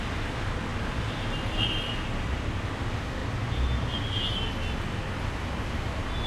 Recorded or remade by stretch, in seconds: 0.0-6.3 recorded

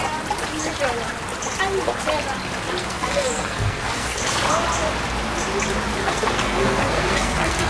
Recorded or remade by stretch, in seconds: 0.0-2.8 recorded; 2.8-4.2 remade; 4.2-6.0 recorded; 6.0-7.7 remade

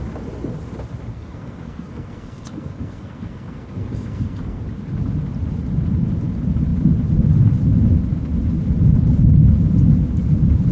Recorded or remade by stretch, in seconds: 0.0-1.1 recorded; 1.1-4.6 remade; 4.6-10.7 recorded

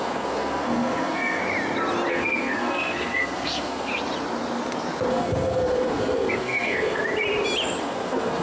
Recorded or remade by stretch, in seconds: 0.0-1.4 remade; 1.4-2.1 recorded; 2.1-3.9 remade; 3.9-5.1 recorded; 5.1-7.0 remade; 7.0-7.8 recorded; 7.8-8.4 remade